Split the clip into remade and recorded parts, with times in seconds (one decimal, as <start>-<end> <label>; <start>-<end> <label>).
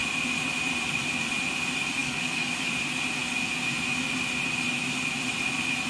0.0-2.0 recorded; 2.0-2.7 remade; 2.7-5.9 recorded